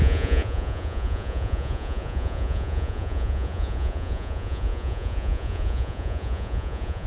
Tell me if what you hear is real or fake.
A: fake